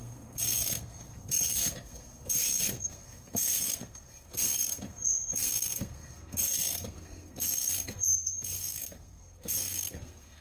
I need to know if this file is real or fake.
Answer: fake